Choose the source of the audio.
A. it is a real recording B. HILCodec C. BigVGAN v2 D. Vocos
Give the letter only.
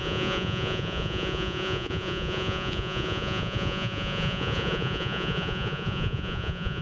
D